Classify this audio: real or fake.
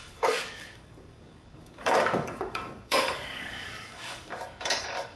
fake